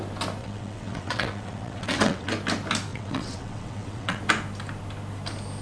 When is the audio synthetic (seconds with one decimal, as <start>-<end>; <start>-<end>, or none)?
0.4-2.3; 2.9-4.2